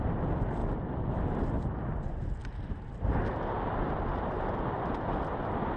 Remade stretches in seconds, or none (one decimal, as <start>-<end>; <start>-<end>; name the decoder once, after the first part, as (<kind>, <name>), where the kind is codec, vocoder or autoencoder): none